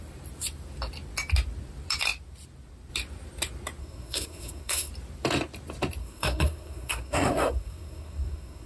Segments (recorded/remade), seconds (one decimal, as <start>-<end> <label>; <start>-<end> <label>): 0.0-3.8 recorded; 3.8-4.9 remade; 4.9-6.0 recorded; 6.0-8.7 remade